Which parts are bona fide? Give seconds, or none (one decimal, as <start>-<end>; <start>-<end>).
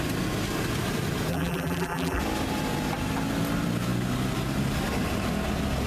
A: 0.0-1.3; 2.2-5.9